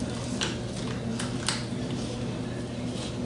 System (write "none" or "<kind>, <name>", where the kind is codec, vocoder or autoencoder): none